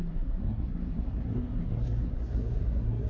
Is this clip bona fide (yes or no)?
no